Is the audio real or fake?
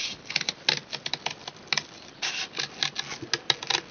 real